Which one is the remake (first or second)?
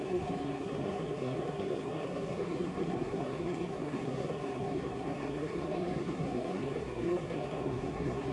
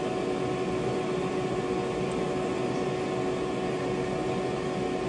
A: first